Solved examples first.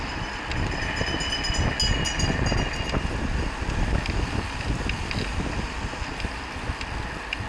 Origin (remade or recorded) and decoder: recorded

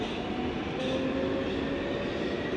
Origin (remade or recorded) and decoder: recorded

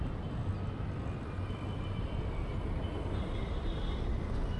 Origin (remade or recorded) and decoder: recorded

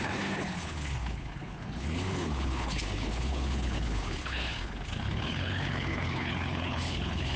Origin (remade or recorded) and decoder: remade, codec, HILCodec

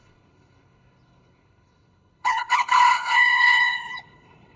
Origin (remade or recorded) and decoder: remade, codec, HILCodec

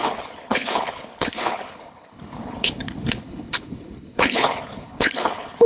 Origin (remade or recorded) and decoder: remade, codec, HILCodec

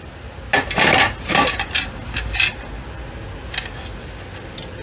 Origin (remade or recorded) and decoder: recorded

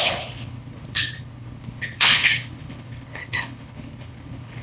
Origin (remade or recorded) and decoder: remade, codec, HILCodec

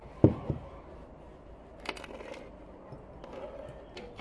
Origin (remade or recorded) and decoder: recorded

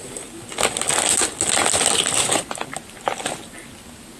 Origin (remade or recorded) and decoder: recorded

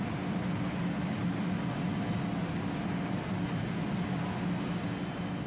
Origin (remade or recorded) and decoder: recorded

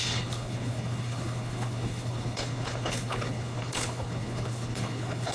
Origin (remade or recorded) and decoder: remade, codec, HILCodec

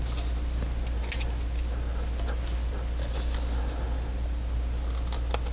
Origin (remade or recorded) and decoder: recorded